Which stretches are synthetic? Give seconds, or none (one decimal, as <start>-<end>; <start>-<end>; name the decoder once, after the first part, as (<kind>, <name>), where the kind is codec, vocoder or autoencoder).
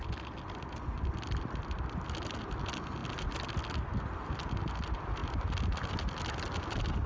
none